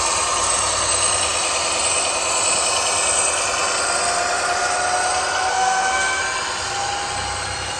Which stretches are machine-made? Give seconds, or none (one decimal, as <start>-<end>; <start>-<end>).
5.5-6.2